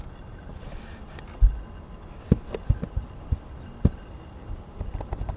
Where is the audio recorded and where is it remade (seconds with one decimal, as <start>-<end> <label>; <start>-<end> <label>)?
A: 0.0-5.4 recorded

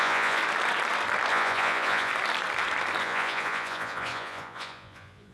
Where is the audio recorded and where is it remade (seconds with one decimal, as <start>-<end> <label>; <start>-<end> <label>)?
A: 0.0-0.4 remade; 0.4-1.3 recorded; 1.3-2.1 remade; 2.1-3.0 recorded; 3.0-5.3 remade

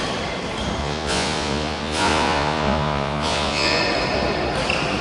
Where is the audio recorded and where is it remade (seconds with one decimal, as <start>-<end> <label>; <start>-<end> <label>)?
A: 0.0-0.8 recorded; 0.8-3.8 remade; 3.8-5.0 recorded

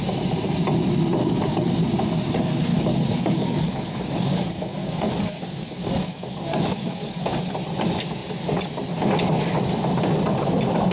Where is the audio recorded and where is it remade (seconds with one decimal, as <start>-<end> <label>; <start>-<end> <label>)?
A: 0.0-1.2 recorded; 1.2-1.8 remade; 1.8-2.7 recorded; 2.7-7.5 remade; 7.5-10.9 recorded

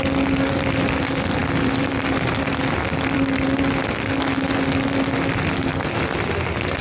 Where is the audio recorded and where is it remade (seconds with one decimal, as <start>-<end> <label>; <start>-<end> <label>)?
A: 0.0-1.4 recorded; 1.4-3.2 remade; 3.2-5.7 recorded; 5.7-6.8 remade